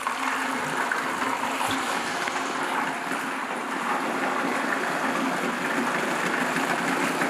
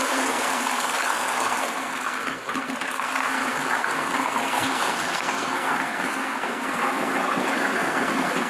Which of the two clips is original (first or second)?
first